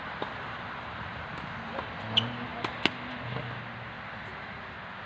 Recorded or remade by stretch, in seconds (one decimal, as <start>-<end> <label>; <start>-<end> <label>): 0.0-5.1 recorded